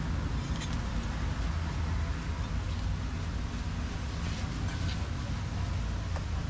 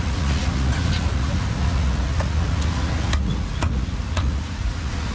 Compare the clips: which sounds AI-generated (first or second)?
second